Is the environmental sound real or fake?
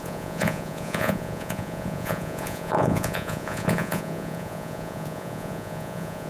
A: fake